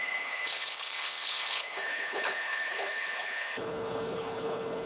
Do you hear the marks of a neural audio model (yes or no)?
yes